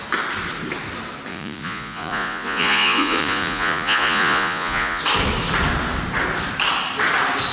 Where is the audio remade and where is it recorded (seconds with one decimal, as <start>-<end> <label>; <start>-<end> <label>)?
0.0-1.3 recorded; 1.3-5.0 remade; 5.0-7.5 recorded